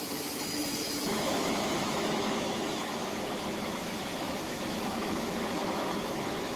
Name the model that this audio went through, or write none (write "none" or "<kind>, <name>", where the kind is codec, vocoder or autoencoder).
autoencoder, DAC-VAE